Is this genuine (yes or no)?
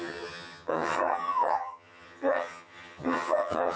no